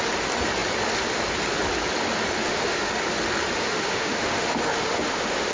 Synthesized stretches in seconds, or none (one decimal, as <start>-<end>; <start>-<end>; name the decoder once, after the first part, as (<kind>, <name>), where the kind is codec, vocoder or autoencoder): 2.4-2.9 (autoencoder, DAC-VAE); 3.6-5.5

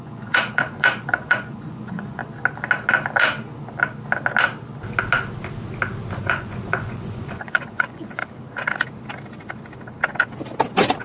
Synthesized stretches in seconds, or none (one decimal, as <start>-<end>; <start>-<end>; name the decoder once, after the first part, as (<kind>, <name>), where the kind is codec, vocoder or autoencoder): 0.0-2.2 (vocoder, Vocos); 6.2-8.2